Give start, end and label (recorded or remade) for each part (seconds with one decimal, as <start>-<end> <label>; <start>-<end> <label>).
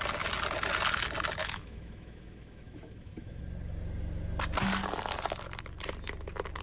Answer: 0.0-1.4 recorded; 1.4-3.4 remade; 3.4-6.6 recorded